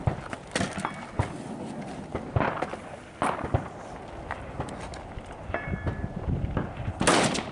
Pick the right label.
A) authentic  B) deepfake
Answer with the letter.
A